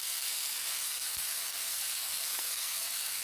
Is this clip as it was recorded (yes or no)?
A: no